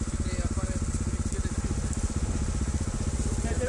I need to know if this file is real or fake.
real